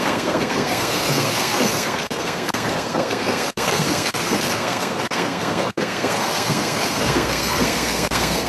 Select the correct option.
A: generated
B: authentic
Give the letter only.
A